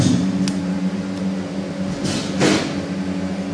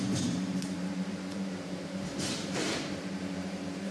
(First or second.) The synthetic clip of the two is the second